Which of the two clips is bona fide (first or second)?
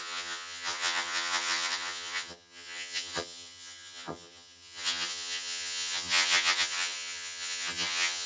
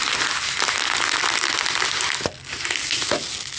second